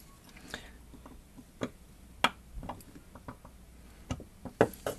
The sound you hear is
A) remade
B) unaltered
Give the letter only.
B